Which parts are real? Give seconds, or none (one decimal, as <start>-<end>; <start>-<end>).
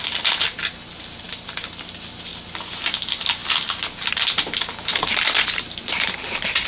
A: 0.0-6.7